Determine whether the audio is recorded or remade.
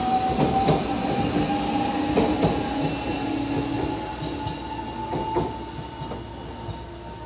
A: recorded